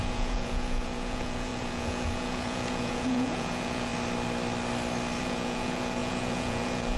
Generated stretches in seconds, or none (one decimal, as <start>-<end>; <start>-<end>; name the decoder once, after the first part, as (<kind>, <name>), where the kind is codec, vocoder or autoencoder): 0.0-3.9 (vocoder, Vocos); 5.2-7.0